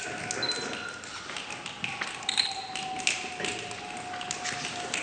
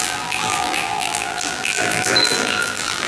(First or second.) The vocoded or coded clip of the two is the second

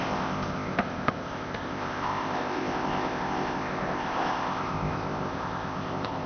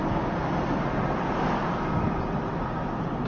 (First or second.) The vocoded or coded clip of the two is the first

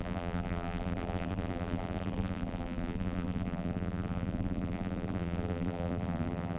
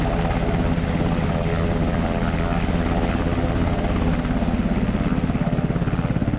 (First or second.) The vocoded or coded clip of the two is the first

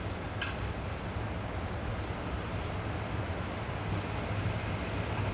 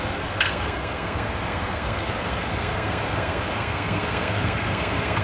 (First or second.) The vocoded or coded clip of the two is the second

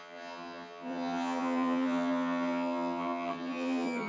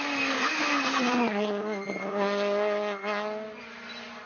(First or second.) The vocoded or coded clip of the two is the first